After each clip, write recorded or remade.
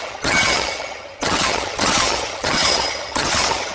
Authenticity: remade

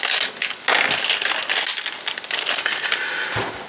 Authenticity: recorded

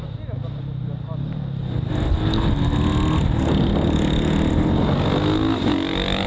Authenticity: recorded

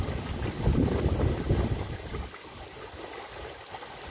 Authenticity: recorded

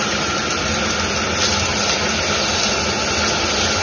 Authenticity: recorded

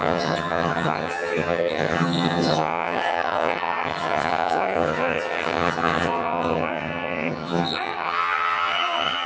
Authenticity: remade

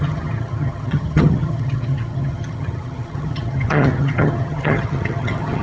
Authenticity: remade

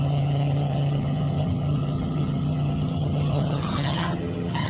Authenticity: remade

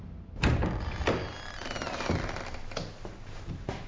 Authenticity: recorded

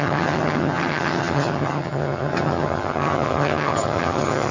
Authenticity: remade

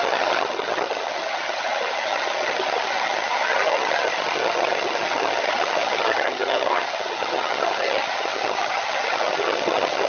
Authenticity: remade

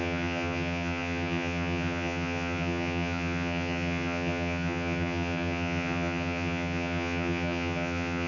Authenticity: remade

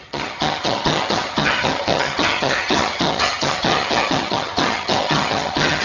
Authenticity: remade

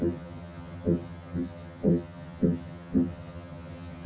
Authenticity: remade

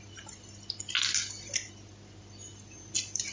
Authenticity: recorded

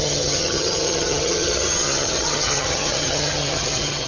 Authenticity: remade